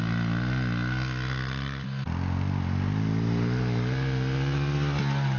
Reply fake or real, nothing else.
real